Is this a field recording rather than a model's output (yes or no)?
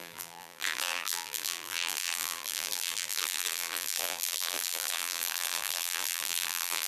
no